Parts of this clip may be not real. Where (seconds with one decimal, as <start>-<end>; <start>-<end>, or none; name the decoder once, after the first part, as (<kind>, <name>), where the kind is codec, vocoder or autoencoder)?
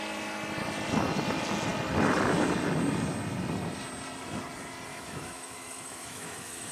4.9-6.7 (autoencoder, DAC-VAE)